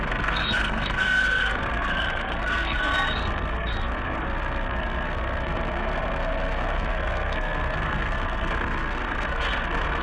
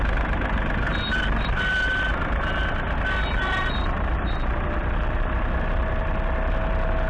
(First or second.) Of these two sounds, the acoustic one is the second